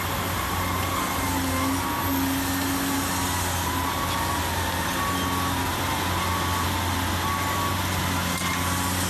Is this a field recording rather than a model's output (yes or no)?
yes